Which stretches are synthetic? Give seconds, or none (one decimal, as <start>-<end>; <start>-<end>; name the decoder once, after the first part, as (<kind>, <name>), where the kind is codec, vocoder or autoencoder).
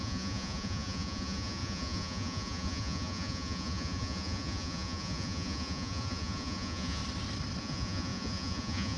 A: 0.0-7.0 (vocoder, Vocos); 7.6-9.0